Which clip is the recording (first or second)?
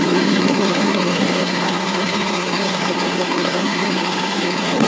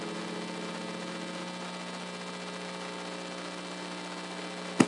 second